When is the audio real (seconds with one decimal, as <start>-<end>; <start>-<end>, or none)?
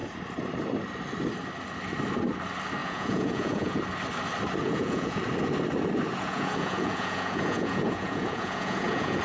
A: 0.0-2.8; 3.8-4.6; 5.2-6.1